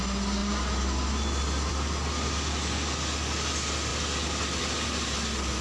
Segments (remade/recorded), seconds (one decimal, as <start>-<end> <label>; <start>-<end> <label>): 0.0-5.6 recorded